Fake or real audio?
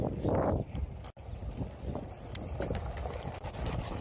real